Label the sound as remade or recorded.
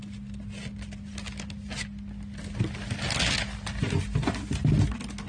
recorded